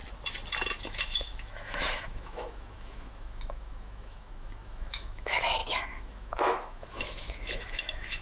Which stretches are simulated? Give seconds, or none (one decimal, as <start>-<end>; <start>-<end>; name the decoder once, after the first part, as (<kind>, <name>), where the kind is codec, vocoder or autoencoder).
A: 0.8-8.2 (autoencoder, DAC-VAE)